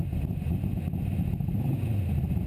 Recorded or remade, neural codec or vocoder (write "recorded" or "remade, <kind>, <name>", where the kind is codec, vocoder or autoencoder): recorded